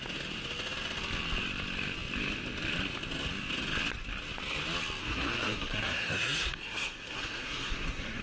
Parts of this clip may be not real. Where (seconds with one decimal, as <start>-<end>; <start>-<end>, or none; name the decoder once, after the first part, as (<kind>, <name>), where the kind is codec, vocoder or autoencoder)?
5.0-8.2 (codec, SNAC)